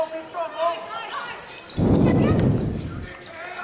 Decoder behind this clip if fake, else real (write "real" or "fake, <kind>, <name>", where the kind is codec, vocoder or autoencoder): real